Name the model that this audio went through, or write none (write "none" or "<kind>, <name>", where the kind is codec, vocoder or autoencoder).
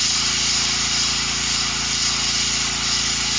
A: none